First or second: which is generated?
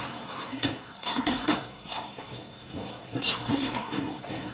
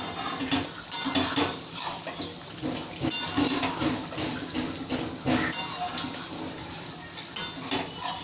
first